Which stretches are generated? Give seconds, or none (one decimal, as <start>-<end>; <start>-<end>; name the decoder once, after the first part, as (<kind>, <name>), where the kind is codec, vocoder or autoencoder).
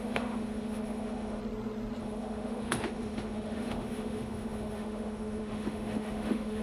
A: 0.0-1.4 (autoencoder, DAC-VAE); 2.0-6.6